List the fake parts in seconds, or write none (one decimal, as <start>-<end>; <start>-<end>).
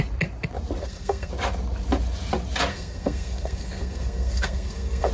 0.8-1.3; 2.7-5.1